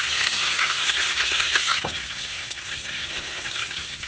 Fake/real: fake